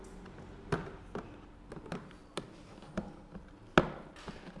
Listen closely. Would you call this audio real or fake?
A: real